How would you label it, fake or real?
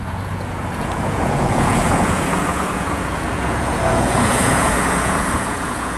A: fake